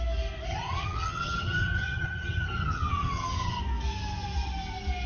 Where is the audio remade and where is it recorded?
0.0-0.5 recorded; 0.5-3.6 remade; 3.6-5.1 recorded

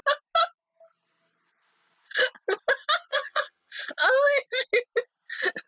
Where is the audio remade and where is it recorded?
0.0-3.1 recorded; 3.1-3.7 remade; 3.7-5.7 recorded